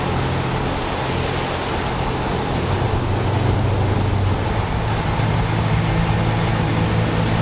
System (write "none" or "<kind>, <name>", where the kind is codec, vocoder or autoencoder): none